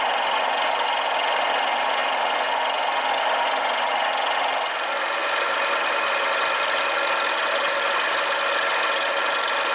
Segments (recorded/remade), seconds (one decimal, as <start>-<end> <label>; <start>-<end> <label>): 0.0-9.7 recorded